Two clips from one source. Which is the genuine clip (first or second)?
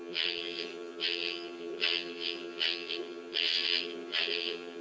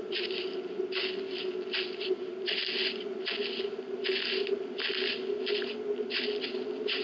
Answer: second